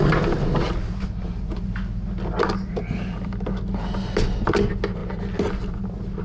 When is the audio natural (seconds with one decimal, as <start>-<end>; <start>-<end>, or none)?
0.0-6.2